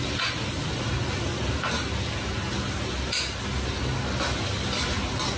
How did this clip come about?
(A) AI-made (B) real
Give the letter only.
B